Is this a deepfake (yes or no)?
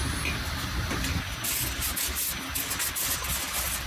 no